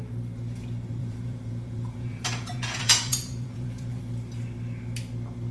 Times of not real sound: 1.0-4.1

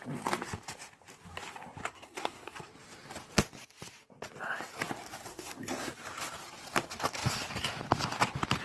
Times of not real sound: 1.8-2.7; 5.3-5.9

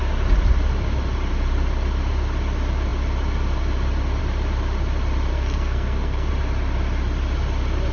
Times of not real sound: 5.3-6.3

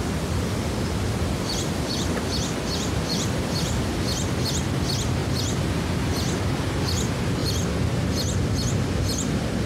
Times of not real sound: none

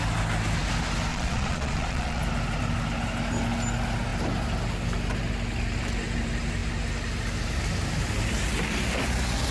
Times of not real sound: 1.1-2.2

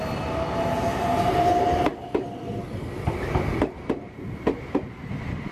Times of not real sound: 0.9-1.5

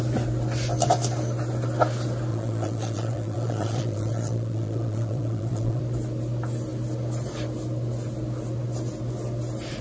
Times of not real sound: 2.3-5.8

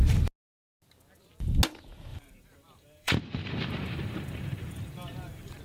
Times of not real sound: 2.1-5.6